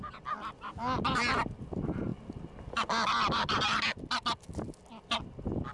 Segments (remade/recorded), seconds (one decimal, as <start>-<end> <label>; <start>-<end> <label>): 0.0-5.7 recorded